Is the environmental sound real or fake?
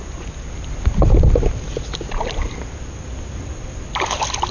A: real